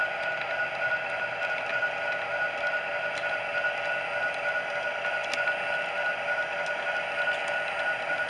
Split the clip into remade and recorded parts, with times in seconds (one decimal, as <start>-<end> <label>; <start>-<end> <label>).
0.0-8.3 recorded